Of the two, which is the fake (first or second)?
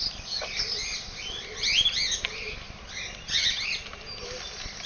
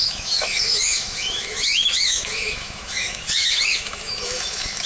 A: second